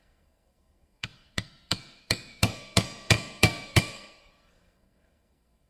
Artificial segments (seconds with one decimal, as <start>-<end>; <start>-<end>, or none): 0.0-5.7